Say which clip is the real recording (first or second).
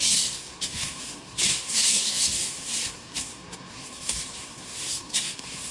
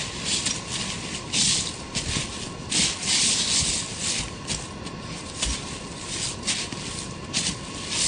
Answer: second